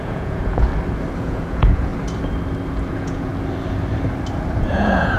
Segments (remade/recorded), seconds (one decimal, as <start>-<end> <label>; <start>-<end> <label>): 0.0-0.7 remade; 0.7-1.2 recorded; 1.2-1.9 remade; 1.9-2.9 recorded; 2.9-3.3 remade; 3.3-4.6 recorded; 4.6-5.2 remade